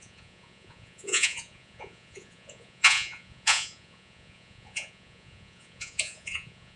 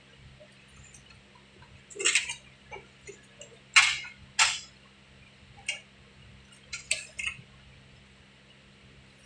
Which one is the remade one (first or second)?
first